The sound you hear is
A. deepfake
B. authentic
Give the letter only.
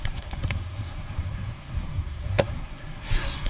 A